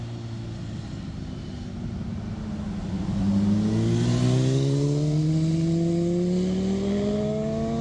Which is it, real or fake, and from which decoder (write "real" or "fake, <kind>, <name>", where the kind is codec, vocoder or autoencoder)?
real